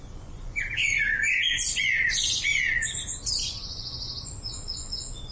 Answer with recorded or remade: remade